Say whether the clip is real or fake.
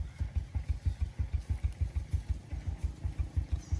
real